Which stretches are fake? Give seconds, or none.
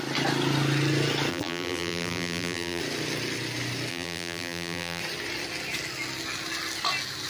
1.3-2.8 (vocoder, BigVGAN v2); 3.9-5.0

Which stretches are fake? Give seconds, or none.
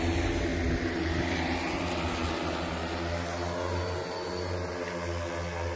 none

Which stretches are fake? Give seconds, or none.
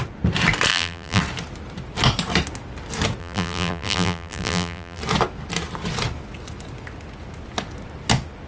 0.7-1.2 (vocoder, BigVGAN v2); 3.2-5.0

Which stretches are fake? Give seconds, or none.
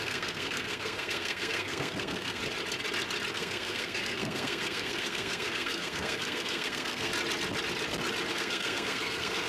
0.0-2.4 (codec, SNAC); 3.3-7.1; 8.3-9.5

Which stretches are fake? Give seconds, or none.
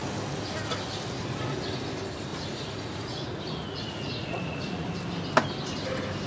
2.3-4.9 (vocoder, Vocos)